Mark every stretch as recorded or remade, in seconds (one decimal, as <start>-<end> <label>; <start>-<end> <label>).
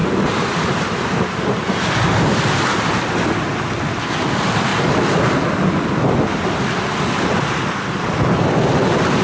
0.0-2.6 remade; 2.6-9.2 recorded